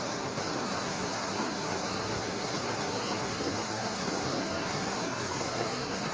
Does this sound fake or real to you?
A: fake